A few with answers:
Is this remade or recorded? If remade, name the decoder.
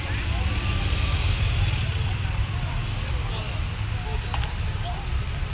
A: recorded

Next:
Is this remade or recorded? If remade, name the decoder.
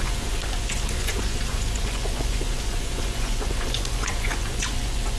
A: remade, vocoder, Vocos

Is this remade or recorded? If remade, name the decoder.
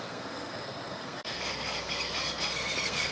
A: remade, codec, SNAC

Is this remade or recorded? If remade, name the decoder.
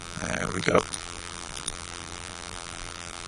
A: remade, vocoder, BigVGAN v2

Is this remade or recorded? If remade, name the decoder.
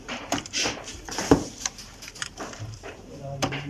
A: remade, vocoder, BigVGAN v2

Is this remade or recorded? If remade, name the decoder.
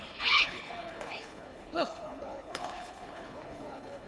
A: remade, codec, HILCodec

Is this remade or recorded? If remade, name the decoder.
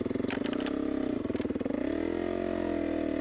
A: recorded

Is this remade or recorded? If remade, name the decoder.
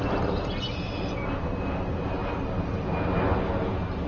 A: recorded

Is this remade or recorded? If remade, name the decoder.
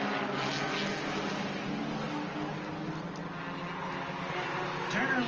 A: recorded